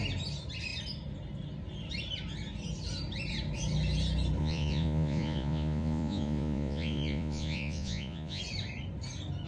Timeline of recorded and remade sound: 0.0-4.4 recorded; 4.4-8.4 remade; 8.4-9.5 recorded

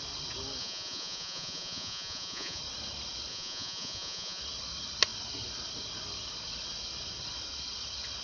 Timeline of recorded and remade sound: 0.0-0.6 recorded; 0.6-2.6 remade; 2.6-3.3 recorded; 3.3-4.4 remade; 4.4-8.2 recorded